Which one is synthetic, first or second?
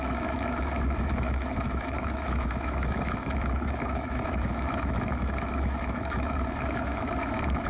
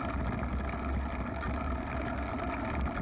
first